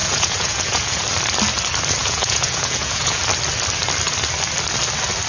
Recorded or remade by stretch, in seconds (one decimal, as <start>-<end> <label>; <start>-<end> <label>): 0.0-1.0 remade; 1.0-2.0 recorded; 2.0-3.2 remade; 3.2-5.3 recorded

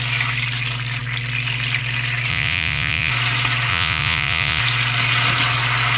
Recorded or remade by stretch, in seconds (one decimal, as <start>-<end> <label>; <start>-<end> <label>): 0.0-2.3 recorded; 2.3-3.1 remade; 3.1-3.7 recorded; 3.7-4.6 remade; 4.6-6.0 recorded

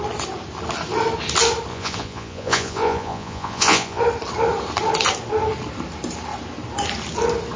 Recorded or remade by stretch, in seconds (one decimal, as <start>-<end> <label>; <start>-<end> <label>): 0.0-1.7 recorded; 1.7-4.0 remade; 4.0-7.6 recorded

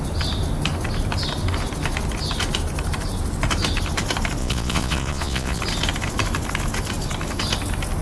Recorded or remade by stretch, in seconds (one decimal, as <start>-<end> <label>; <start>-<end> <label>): 0.0-4.4 recorded; 4.4-5.6 remade; 5.6-8.0 recorded

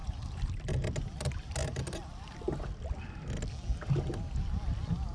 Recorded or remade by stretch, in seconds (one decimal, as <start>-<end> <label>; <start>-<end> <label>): 0.0-5.1 recorded

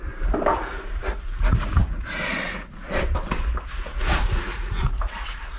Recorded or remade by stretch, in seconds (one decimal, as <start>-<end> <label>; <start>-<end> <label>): 0.0-0.7 recorded; 0.7-2.7 remade; 2.7-3.7 recorded; 3.7-5.6 remade